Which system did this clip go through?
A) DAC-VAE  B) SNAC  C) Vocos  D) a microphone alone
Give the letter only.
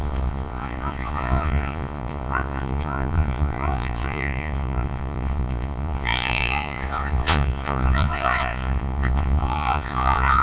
C